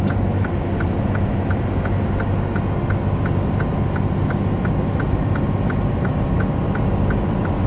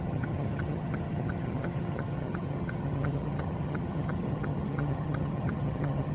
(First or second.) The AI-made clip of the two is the second